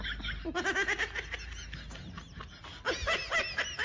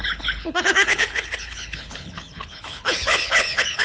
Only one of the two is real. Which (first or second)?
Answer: first